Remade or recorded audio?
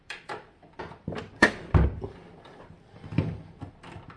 remade